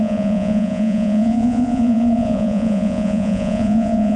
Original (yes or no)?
no